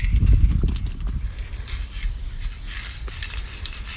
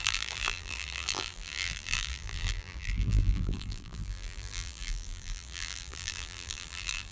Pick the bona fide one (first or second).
first